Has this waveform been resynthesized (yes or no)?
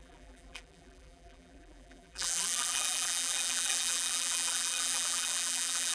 yes